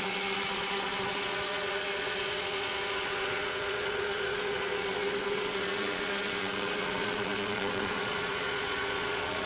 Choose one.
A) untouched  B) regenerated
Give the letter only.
B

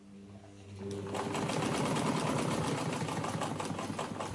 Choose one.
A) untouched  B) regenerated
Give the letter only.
A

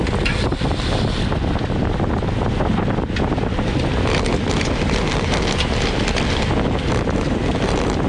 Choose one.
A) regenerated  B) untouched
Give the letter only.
B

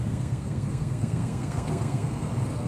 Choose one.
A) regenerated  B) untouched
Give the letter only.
A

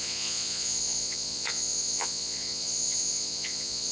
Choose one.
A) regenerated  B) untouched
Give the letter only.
A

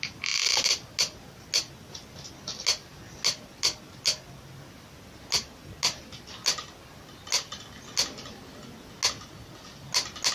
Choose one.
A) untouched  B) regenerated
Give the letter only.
A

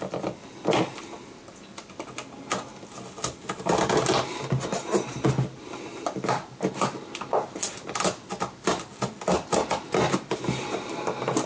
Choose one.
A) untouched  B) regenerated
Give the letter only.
A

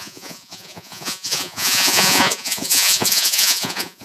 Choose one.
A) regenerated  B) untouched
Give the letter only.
A